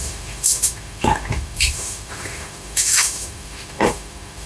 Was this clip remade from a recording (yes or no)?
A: yes